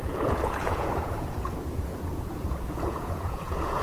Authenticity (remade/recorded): remade